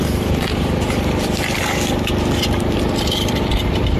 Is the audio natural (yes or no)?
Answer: no